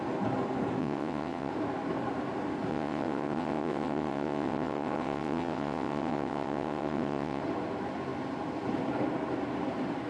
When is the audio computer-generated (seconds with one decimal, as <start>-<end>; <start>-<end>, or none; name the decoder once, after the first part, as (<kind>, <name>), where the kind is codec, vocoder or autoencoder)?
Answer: 0.8-1.5 (vocoder, WaveNeXt); 2.7-7.4